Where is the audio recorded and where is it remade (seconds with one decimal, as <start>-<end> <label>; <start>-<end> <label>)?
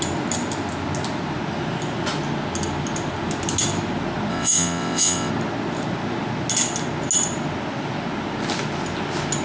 0.0-4.3 recorded; 4.3-5.3 remade; 5.3-9.4 recorded